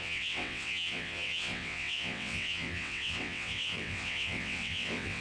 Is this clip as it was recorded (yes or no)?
no